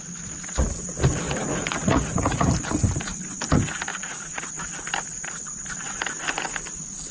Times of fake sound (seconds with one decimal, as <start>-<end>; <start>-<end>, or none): 1.4-2.5; 3.9-4.5